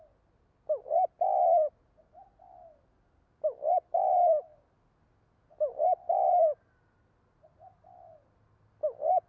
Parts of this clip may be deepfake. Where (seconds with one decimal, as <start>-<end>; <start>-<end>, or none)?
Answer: none